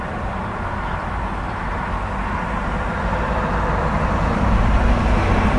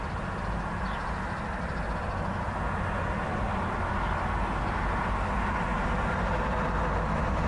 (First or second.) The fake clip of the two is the first